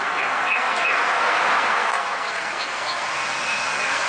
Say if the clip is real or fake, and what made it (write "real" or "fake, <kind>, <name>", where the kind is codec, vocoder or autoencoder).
fake, codec, SNAC